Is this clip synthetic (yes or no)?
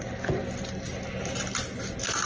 no